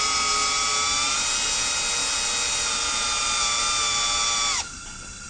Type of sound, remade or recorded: recorded